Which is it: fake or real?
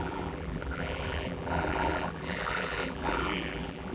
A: fake